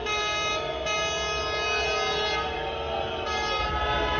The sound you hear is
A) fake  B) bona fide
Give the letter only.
B